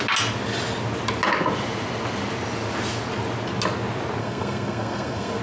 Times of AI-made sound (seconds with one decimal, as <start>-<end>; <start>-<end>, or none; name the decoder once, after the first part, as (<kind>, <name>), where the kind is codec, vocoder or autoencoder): 4.2-5.4 (codec, SNAC)